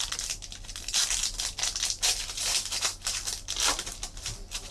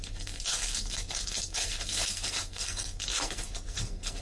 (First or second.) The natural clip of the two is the first